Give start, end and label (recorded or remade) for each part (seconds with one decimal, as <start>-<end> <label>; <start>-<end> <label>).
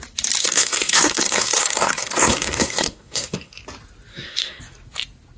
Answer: 0.0-0.4 recorded; 0.4-3.6 remade; 3.6-4.1 recorded; 4.1-4.6 remade; 4.6-5.4 recorded